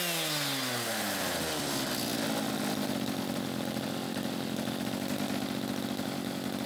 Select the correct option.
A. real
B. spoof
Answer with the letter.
A